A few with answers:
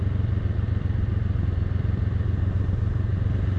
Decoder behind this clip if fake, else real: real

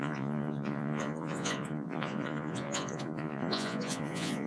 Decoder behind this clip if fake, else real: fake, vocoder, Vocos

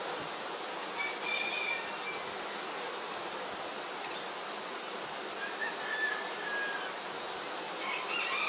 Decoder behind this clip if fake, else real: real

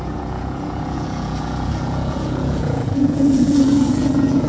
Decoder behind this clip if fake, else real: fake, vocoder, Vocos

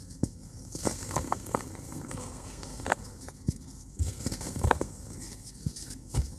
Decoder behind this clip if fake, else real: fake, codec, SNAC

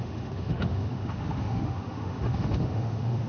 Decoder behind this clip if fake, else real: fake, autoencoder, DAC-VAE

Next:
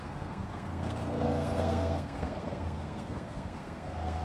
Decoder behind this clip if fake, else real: fake, codec, SNAC